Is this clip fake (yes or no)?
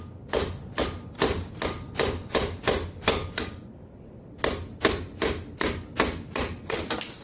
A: no